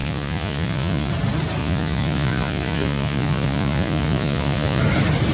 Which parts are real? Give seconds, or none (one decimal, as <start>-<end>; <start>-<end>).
1.1-1.6; 4.8-5.3